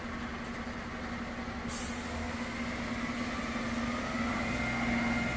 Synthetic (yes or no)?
no